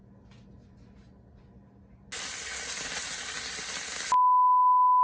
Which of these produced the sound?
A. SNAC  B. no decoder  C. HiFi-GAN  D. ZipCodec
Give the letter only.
B